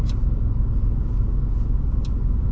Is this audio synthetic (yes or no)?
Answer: no